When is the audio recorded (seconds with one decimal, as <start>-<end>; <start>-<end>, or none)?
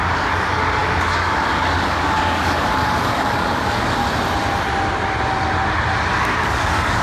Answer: 4.0-6.2